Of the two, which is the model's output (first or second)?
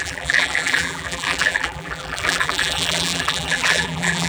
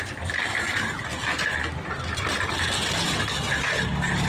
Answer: first